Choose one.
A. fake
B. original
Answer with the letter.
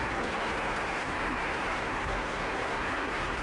A